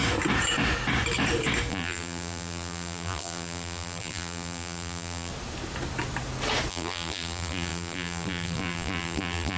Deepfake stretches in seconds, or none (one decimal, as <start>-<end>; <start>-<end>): 1.7-5.3; 6.7-9.6